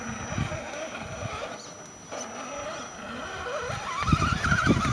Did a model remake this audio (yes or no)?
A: no